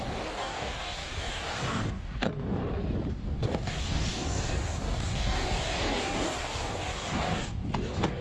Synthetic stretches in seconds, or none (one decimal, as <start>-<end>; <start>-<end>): 0.0-2.6; 3.1-8.2